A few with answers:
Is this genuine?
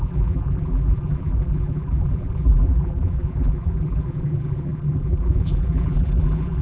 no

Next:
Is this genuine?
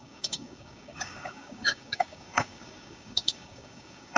no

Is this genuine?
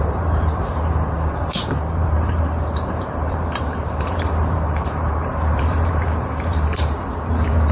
no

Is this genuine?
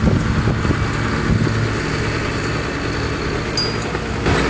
yes